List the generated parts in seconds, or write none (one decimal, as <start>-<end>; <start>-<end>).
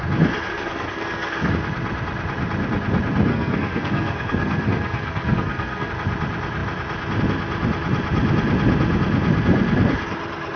0.5-1.5; 3.3-5.9